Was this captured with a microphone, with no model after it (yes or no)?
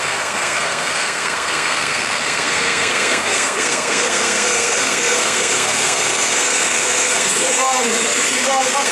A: no